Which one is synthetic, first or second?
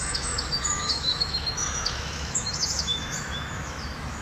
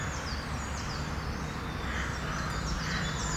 first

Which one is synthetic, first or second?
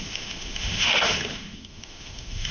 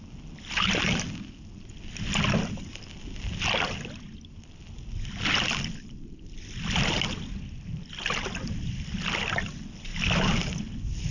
first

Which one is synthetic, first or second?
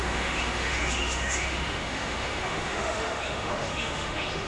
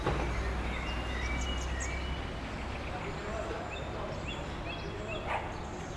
first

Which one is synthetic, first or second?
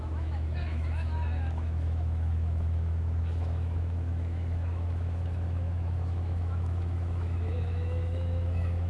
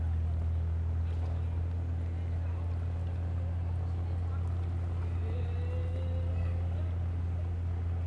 first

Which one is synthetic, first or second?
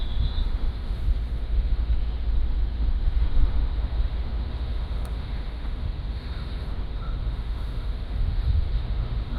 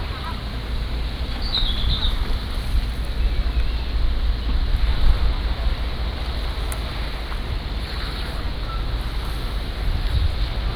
first